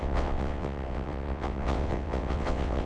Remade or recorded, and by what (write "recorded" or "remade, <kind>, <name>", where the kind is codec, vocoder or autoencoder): remade, vocoder, WaveNeXt